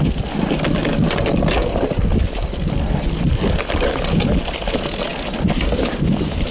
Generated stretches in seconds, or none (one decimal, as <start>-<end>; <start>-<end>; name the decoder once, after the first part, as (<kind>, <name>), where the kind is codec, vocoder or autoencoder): none